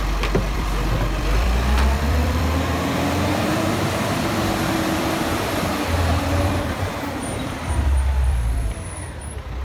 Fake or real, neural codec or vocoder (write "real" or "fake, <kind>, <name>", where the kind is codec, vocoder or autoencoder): fake, vocoder, BigVGAN v2